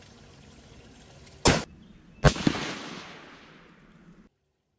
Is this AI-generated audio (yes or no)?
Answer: no